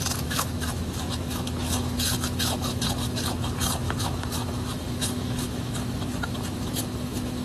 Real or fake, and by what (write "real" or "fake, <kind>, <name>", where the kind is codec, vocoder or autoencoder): fake, autoencoder, DAC-VAE